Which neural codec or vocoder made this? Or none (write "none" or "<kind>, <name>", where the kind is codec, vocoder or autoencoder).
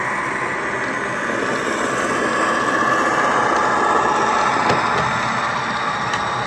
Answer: none